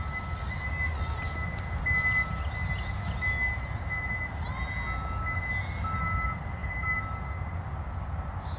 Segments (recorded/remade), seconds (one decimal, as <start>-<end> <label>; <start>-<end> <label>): 0.0-8.6 recorded